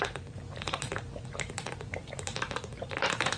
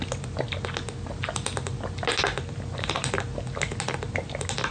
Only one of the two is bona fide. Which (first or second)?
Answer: second